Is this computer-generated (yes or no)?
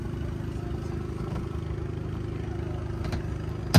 no